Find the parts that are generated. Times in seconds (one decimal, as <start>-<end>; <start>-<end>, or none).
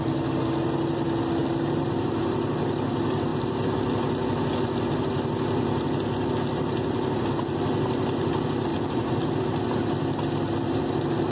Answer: 8.7-9.4